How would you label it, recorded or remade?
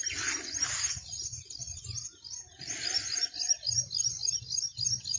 remade